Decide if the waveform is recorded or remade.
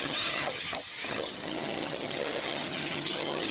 remade